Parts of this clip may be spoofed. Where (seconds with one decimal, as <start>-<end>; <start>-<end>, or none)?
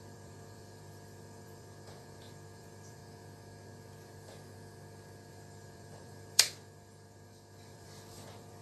0.0-3.0; 5.3-8.6